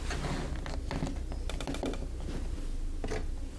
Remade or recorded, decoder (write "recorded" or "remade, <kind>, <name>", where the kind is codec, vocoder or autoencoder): recorded